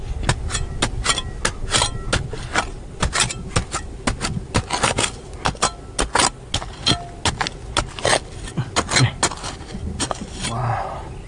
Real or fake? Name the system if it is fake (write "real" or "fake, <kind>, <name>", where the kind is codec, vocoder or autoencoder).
real